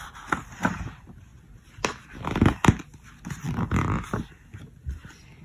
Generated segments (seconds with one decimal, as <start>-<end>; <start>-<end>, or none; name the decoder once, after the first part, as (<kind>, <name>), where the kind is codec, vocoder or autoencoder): none